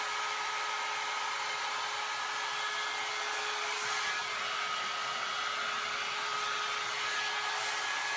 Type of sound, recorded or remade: recorded